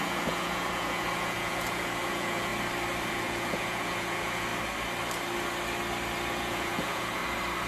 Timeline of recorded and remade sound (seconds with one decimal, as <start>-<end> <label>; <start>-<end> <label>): 0.0-2.5 remade; 2.5-3.1 recorded; 3.1-4.5 remade; 4.5-6.3 recorded; 6.3-7.2 remade; 7.2-7.7 recorded

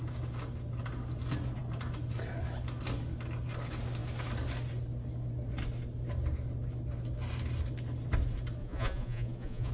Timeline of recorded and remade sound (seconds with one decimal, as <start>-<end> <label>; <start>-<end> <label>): 0.0-8.6 recorded; 8.6-9.7 remade

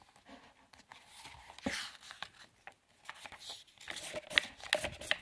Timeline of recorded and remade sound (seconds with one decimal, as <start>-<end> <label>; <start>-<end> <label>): 0.0-5.2 recorded

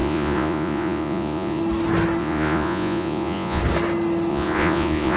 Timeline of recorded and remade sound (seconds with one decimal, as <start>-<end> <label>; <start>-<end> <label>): 0.0-1.6 remade; 1.6-2.2 recorded; 2.2-3.6 remade; 3.6-4.3 recorded; 4.3-5.2 remade